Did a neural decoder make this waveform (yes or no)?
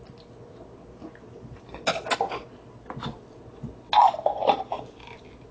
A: no